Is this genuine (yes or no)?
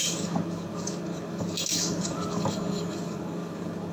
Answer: no